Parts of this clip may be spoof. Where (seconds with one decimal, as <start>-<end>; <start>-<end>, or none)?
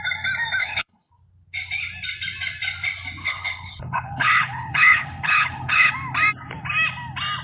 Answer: 0.6-1.1; 3.2-5.9